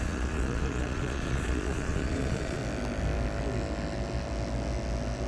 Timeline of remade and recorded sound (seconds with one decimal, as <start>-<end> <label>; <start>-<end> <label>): 0.0-2.6 remade; 2.6-5.3 recorded

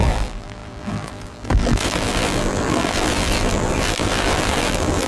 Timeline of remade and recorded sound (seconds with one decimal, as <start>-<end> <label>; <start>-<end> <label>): 0.0-5.1 remade